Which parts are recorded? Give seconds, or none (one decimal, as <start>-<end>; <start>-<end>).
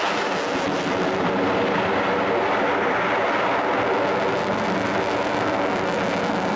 0.0-6.6